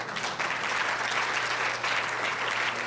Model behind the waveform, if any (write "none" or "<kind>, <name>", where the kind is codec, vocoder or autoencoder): none